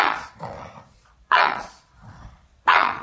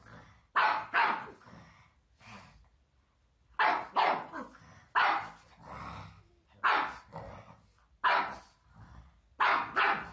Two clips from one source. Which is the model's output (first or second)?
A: first